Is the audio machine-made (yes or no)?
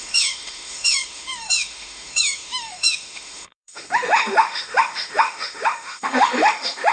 yes